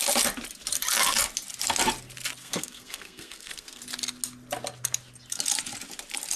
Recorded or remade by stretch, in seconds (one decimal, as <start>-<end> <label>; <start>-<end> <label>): 0.0-2.4 recorded; 2.4-3.8 remade; 3.8-6.4 recorded